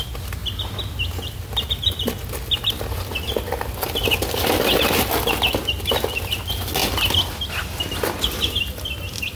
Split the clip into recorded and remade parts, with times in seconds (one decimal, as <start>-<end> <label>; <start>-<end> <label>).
0.0-6.8 recorded; 6.8-9.3 remade